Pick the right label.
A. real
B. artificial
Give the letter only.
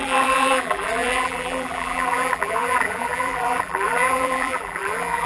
B